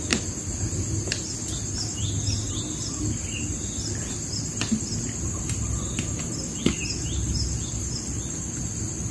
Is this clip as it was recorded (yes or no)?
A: yes